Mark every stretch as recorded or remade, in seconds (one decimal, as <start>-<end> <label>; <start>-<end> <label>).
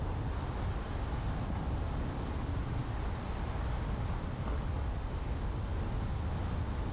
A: 0.0-6.9 recorded